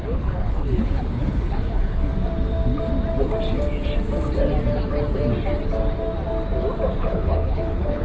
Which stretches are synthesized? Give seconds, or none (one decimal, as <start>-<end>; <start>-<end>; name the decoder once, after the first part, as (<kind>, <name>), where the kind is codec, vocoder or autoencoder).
0.0-2.1 (codec, HILCodec); 6.9-8.0